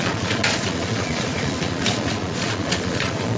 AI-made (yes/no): yes